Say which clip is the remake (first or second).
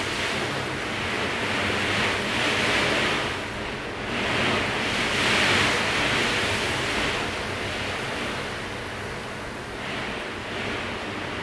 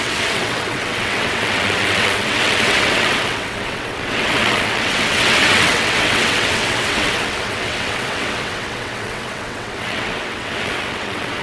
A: second